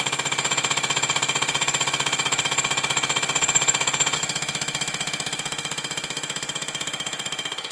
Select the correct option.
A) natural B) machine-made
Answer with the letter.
B